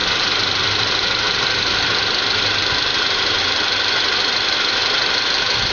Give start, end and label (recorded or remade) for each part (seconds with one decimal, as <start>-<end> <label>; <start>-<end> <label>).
0.0-3.4 remade; 3.4-4.8 recorded; 4.8-5.7 remade